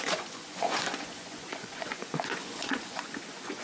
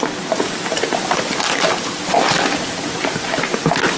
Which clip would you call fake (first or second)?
first